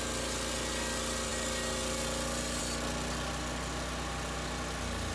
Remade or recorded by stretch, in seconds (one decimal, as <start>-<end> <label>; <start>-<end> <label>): 0.0-5.1 recorded